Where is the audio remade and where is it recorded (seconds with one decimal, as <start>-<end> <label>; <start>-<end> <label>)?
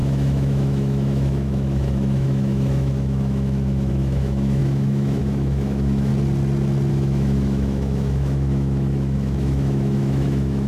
0.0-6.1 remade; 6.1-6.9 recorded; 6.9-10.7 remade